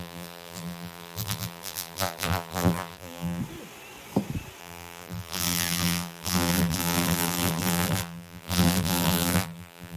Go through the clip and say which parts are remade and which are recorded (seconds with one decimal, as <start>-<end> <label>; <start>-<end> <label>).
0.0-3.4 remade; 3.4-4.6 recorded; 4.6-10.0 remade

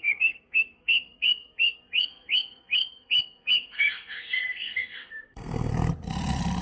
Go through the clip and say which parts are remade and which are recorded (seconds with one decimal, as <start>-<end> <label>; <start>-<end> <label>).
0.0-5.7 remade; 5.7-6.6 recorded

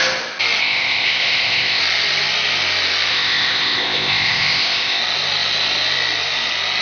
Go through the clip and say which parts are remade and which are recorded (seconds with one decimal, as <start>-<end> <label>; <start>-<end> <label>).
0.0-0.6 recorded; 0.6-1.8 remade; 1.8-3.1 recorded; 3.1-5.0 remade; 5.0-6.8 recorded

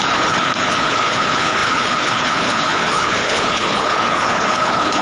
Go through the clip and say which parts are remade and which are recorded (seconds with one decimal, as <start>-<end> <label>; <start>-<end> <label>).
0.0-5.0 remade